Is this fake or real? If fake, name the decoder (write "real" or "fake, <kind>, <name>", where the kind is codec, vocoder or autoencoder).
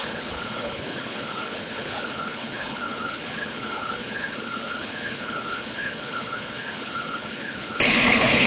fake, codec, HILCodec